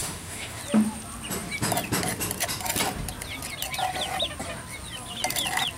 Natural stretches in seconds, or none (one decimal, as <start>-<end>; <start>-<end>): 0.6-5.8